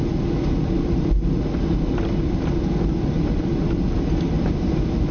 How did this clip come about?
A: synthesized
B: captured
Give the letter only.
B